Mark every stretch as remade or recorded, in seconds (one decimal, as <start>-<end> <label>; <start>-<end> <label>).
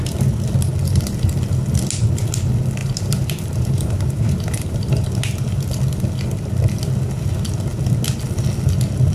0.0-2.8 recorded; 2.8-5.5 remade; 5.5-9.1 recorded